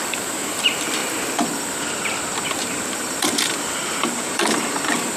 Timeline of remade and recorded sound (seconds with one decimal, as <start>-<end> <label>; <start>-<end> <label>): 0.0-1.0 remade; 1.0-2.5 recorded; 2.5-5.2 remade